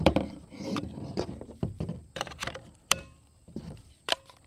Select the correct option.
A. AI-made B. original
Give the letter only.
A